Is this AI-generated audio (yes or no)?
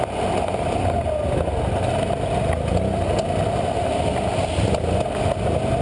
no